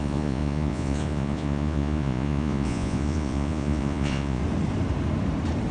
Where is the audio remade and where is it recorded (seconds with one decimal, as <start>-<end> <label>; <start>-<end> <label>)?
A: 0.0-4.4 remade; 4.4-5.7 recorded